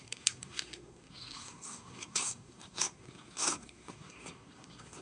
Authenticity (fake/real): fake